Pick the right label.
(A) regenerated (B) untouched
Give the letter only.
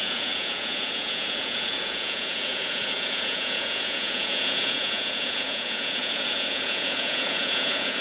A